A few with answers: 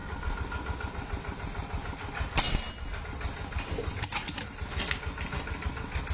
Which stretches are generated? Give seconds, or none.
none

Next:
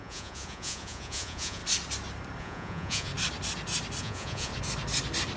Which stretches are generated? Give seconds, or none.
0.0-1.6 (vocoder, Vocos); 2.4-3.1; 4.0-4.5

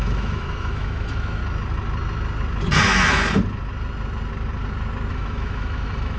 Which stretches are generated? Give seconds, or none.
0.0-1.4 (autoencoder, DAC-VAE); 5.1-6.2

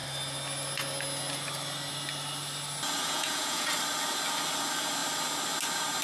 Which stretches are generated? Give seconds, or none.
3.0-3.7 (vocoder, Vocos)

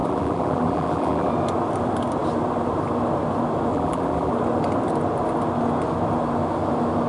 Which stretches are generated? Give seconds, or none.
0.0-1.3 (vocoder, BigVGAN v2); 3.7-4.3

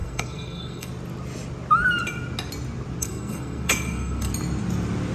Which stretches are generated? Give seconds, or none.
0.0-0.9 (codec, SNAC); 3.0-4.3

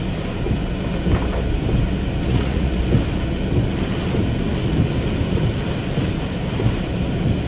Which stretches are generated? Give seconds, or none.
2.3-2.8 (vocoder, Vocos)